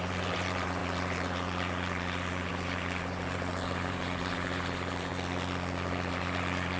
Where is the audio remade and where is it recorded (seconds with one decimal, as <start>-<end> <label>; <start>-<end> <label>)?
0.0-5.1 remade; 5.1-6.1 recorded; 6.1-6.8 remade